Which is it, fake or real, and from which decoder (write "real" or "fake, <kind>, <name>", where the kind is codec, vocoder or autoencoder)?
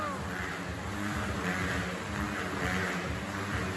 real